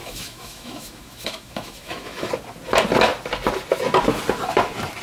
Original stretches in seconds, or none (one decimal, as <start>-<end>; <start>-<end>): 2.3-5.0